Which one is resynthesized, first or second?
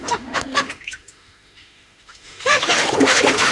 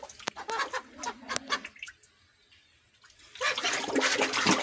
first